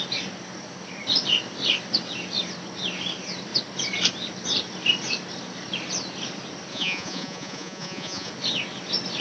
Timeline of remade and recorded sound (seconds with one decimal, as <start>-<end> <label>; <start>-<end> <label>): 0.0-6.7 recorded; 6.7-8.3 remade; 8.3-9.2 recorded